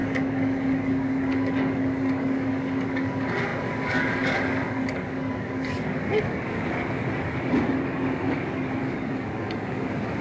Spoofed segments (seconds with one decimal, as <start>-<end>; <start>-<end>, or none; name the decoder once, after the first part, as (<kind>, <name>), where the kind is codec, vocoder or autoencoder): 0.0-10.2 (codec, DAC)